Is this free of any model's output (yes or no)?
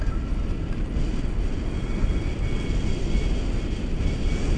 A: yes